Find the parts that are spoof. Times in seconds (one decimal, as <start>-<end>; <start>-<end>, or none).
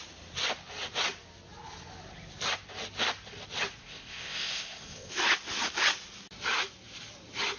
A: 3.8-5.2